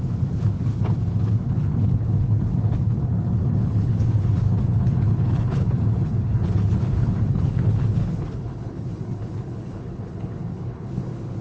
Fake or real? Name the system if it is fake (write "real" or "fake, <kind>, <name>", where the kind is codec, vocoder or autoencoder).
fake, codec, HILCodec